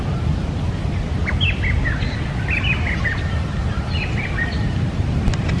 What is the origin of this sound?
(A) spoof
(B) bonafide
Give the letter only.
B